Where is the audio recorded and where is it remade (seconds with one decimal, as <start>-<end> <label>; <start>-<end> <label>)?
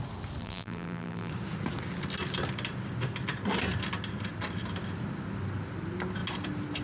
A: 0.0-0.4 recorded; 0.4-1.3 remade; 1.3-6.8 recorded